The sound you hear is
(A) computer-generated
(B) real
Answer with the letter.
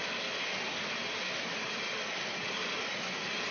B